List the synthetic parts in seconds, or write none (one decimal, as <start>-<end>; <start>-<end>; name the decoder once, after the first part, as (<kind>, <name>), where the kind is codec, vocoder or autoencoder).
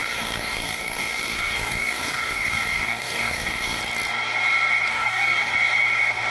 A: 0.0-3.8 (codec, DAC); 4.9-5.5